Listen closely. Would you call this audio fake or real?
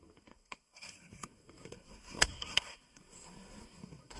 fake